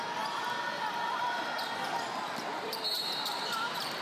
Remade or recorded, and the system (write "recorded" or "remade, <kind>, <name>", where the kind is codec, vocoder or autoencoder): recorded